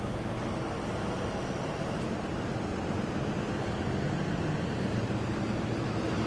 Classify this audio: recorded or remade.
recorded